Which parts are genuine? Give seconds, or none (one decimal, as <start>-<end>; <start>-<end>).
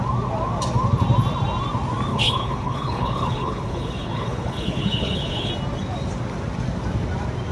0.0-2.1; 5.5-7.5